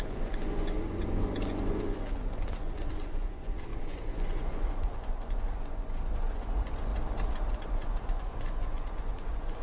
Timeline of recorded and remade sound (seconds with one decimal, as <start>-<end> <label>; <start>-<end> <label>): 0.0-6.9 remade; 6.9-7.5 recorded; 7.5-9.6 remade